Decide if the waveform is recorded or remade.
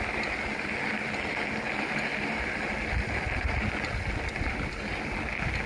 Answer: recorded